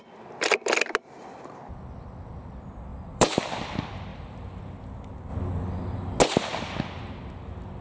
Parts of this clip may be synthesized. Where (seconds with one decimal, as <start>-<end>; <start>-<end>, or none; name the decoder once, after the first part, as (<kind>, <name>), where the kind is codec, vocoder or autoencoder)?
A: 2.9-3.4 (vocoder, BigVGAN v2); 4.1-4.6; 5.3-6.2